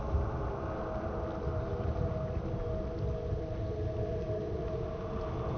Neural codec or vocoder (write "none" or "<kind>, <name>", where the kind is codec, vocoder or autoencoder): none